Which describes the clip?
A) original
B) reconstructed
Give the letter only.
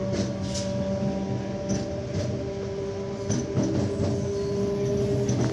A